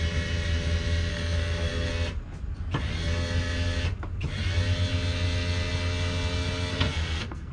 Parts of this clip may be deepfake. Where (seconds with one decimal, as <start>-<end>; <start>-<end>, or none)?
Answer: 1.1-1.9; 6.7-7.5